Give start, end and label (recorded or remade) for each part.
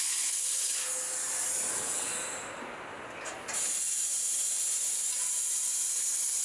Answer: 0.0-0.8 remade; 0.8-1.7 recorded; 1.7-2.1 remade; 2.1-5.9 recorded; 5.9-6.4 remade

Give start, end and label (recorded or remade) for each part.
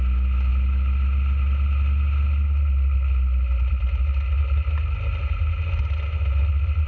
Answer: 0.0-6.9 recorded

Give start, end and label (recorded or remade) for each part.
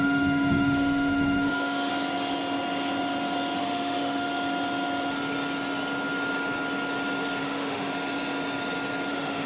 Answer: 0.0-1.9 remade; 1.9-3.6 recorded; 3.6-4.3 remade; 4.3-7.4 recorded; 7.4-7.9 remade; 7.9-9.1 recorded; 9.1-9.5 remade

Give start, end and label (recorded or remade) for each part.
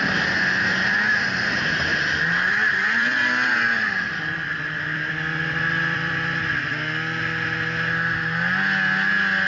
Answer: 0.0-1.9 recorded; 1.9-6.6 remade; 6.6-9.5 recorded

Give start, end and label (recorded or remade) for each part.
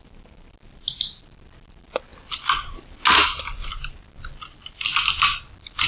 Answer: 0.0-5.9 recorded